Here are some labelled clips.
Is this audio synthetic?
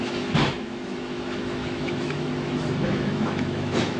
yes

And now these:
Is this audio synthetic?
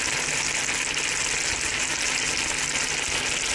no